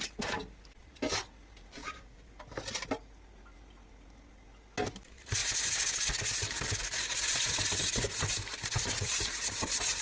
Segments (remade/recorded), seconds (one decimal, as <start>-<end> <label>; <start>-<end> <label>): 0.0-1.8 recorded; 1.8-2.3 remade; 2.3-10.0 recorded